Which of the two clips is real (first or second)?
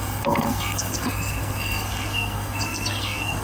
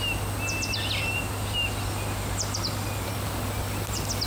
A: second